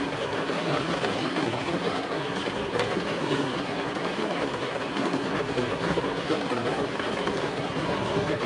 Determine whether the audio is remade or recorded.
remade